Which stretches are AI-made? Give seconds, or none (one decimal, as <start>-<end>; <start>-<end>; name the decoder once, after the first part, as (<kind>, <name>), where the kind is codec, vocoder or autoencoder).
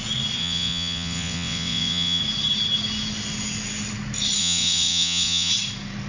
0.4-2.2 (vocoder, WaveNeXt); 4.4-5.5